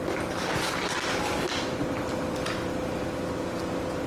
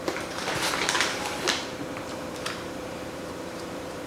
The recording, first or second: first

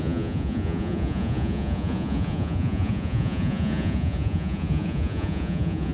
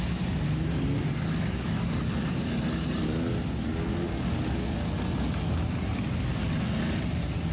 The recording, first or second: second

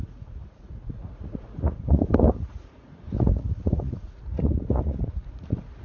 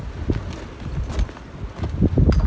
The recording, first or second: second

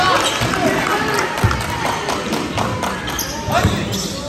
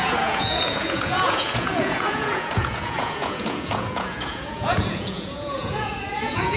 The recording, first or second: first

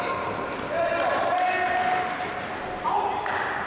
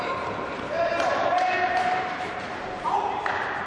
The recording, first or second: first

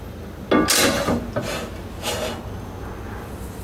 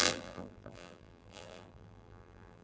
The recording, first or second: first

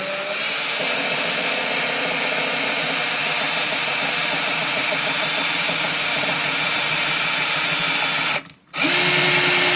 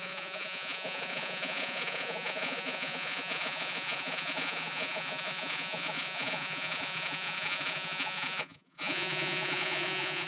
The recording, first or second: first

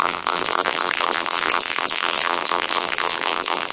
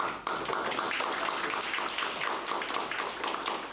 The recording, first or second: second